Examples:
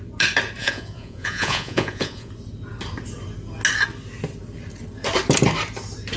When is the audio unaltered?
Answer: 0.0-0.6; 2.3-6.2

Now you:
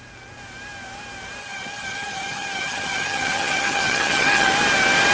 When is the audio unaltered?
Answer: 0.0-1.4; 4.5-5.1

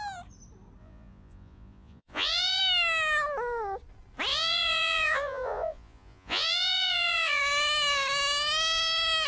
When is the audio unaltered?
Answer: 0.0-0.8; 2.6-4.3; 7.4-9.3

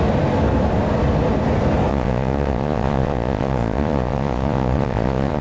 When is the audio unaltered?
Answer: 0.0-1.9

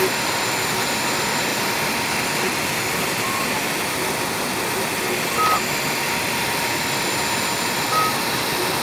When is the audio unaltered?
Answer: 0.0-8.8

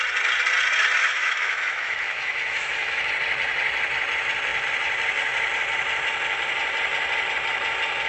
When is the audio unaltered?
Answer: 0.0-1.0; 3.1-8.1

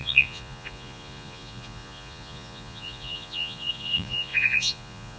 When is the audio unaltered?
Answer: none

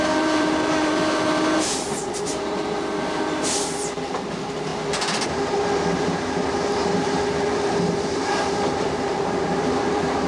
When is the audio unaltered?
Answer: 4.7-5.9